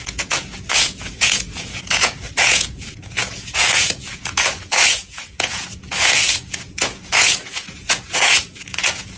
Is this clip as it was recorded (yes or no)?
no